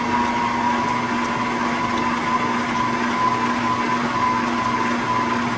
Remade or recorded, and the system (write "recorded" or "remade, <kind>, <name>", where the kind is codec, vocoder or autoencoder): recorded